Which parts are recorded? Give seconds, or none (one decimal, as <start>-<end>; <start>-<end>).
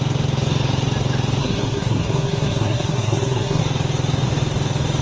0.0-1.4; 3.6-5.0